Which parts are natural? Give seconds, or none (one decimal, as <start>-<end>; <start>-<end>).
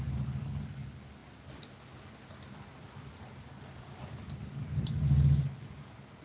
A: 0.0-1.2; 4.9-6.2